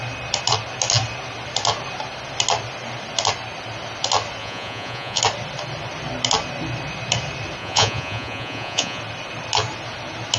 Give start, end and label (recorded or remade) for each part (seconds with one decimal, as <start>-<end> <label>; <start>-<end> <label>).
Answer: 0.0-4.4 recorded; 4.4-5.2 remade; 5.2-7.6 recorded; 7.6-9.0 remade; 9.0-10.4 recorded